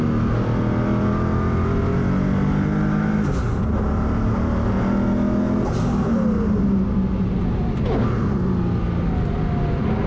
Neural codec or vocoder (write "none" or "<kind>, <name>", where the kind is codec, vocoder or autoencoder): none